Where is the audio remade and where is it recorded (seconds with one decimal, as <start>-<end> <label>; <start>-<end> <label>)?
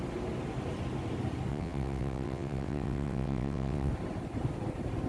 0.0-1.5 recorded; 1.5-3.9 remade; 3.9-5.1 recorded